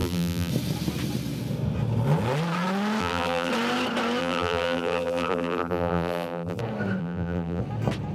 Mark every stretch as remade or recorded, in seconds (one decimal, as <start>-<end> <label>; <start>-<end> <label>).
0.0-0.5 remade; 0.5-3.0 recorded; 3.0-3.5 remade; 3.5-4.2 recorded; 4.2-6.6 remade; 6.6-7.0 recorded; 7.0-7.6 remade; 7.6-8.1 recorded